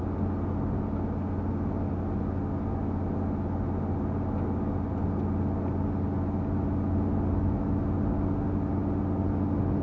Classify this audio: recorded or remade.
recorded